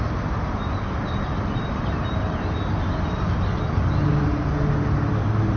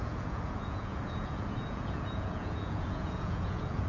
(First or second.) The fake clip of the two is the second